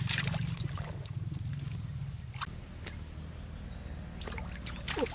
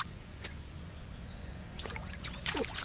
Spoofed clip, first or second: second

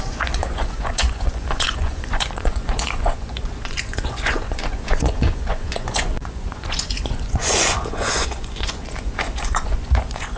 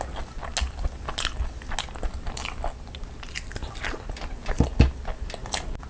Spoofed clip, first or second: first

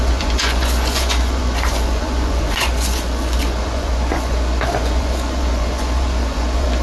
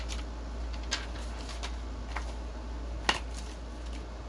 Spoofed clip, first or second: first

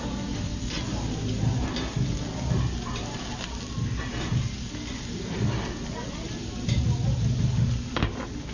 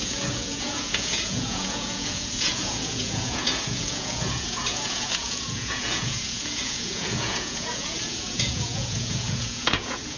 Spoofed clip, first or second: second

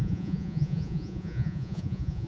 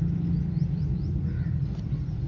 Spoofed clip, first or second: first